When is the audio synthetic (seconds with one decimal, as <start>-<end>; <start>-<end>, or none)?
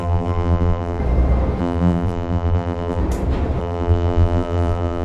0.0-1.0; 1.6-3.0; 3.6-5.0